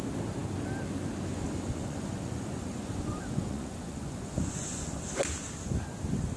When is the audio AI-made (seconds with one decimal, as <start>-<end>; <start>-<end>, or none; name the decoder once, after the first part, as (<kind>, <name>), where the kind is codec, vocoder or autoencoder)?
1.3-5.1 (vocoder, Vocos)